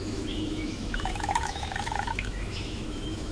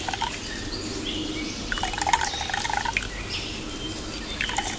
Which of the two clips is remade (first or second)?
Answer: first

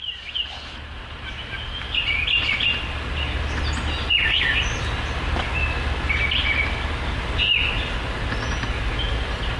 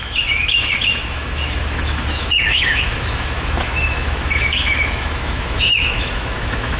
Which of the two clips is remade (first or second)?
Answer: second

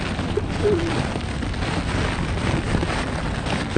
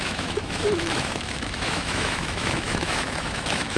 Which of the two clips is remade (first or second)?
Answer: second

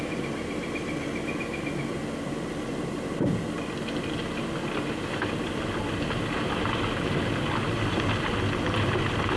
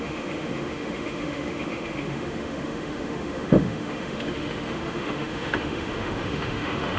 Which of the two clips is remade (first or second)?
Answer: second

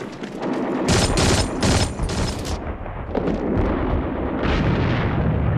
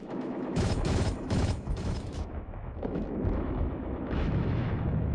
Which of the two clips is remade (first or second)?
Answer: second